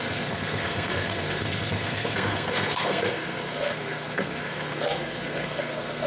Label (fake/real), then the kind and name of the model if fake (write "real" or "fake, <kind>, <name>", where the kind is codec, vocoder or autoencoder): fake, codec, SNAC